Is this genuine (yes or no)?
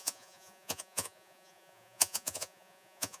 no